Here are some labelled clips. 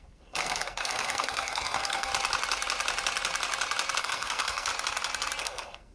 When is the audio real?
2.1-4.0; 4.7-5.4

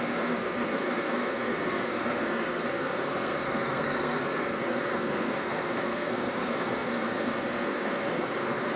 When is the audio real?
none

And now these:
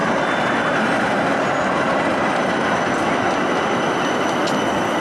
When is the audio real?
0.0-5.0